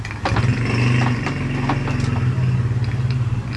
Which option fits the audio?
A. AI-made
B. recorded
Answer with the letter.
B